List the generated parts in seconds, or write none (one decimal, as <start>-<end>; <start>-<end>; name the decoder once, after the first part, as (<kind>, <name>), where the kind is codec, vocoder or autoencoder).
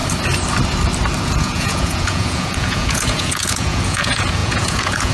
1.2-5.1 (vocoder, Vocos)